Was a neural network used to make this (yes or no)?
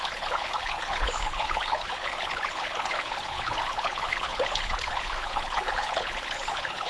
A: yes